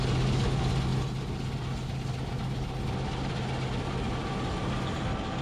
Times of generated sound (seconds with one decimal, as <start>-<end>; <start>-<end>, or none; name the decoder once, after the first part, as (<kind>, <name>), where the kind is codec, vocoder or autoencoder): none